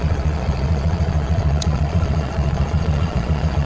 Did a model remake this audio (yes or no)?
yes